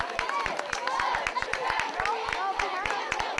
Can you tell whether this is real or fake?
real